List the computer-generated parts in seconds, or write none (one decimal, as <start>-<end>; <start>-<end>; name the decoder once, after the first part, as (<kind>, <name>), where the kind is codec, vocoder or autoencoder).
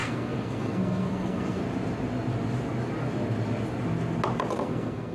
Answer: 0.0-1.6 (codec, SNAC); 4.5-5.1